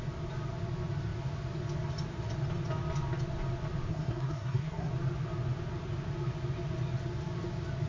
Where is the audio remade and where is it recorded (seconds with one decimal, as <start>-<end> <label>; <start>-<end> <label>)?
0.0-3.9 recorded; 3.9-4.9 remade; 4.9-7.9 recorded